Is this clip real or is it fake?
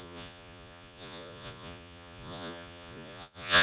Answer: fake